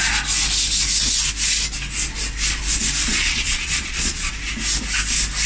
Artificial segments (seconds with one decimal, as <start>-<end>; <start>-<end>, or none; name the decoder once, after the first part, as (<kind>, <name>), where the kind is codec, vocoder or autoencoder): 3.1-4.3 (vocoder, Vocos)

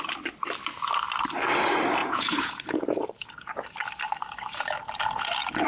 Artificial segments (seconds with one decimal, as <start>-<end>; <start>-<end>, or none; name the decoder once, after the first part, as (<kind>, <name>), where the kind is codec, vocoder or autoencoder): 2.0-3.1 (vocoder, Vocos)

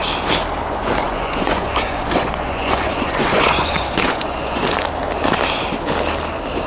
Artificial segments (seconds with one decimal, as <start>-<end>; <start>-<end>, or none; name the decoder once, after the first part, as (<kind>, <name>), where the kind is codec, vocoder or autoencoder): 0.6-4.6 (vocoder, Vocos)

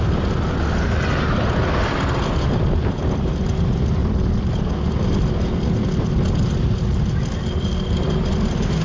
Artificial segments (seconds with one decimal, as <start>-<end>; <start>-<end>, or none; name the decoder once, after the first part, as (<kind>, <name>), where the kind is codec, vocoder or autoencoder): none

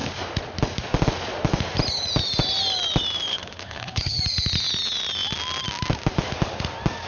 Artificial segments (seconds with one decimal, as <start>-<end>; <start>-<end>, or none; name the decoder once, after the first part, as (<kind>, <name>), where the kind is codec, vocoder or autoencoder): 3.3-4.2 (codec, HILCodec)